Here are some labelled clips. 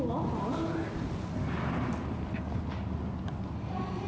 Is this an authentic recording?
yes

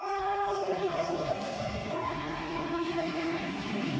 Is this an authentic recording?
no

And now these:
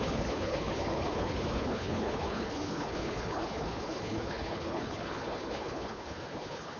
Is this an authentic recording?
no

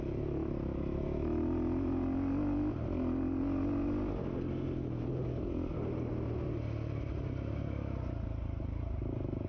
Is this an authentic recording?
yes